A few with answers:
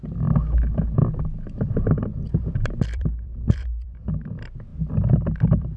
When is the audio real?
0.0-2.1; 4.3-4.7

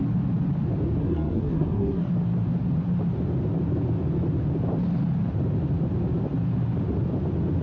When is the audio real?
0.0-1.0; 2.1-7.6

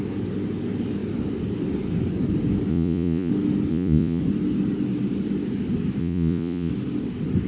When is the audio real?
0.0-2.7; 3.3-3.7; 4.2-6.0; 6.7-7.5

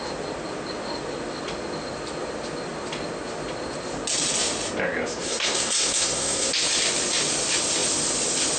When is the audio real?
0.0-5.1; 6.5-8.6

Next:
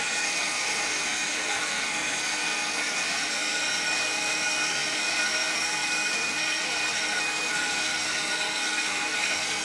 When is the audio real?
none